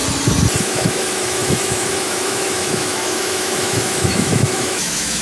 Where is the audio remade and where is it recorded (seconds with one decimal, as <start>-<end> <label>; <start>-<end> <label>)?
0.0-0.6 recorded; 0.6-5.2 remade